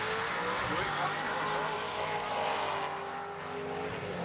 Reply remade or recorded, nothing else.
recorded